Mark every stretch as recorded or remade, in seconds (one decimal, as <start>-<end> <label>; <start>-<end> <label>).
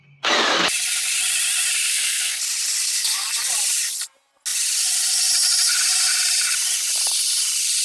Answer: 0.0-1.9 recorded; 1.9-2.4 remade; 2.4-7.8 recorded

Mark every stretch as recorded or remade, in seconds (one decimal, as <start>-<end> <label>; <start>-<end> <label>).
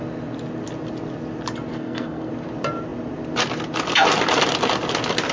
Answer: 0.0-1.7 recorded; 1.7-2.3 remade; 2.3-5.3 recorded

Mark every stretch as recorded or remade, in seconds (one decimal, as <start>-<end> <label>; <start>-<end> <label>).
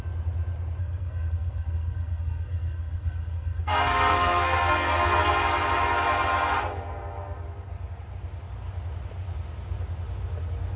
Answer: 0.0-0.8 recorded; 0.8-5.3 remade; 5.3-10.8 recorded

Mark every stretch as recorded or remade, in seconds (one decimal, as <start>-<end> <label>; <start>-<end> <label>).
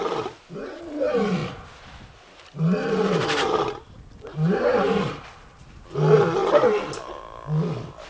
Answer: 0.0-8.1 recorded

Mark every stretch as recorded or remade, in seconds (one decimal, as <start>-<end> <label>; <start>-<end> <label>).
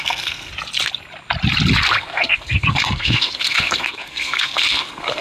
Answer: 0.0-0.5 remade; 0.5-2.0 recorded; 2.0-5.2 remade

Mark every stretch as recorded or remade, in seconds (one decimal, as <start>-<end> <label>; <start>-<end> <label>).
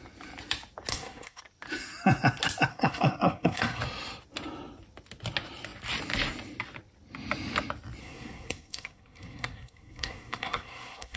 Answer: 0.0-0.9 recorded; 0.9-1.4 remade; 1.4-2.7 recorded; 2.7-3.8 remade; 3.8-8.0 recorded; 8.0-11.2 remade